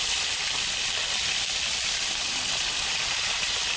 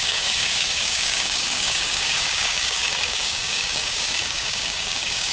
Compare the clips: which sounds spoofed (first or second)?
second